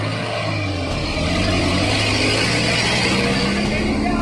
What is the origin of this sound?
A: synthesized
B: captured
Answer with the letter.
B